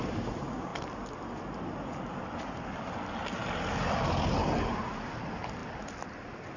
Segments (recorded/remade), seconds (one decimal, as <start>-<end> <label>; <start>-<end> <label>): 0.0-0.7 recorded; 0.7-2.9 remade; 2.9-6.6 recorded